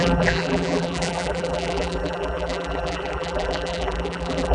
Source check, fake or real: fake